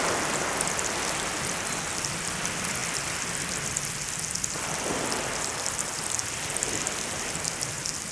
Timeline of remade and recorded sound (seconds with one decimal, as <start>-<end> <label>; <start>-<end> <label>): 0.0-8.1 recorded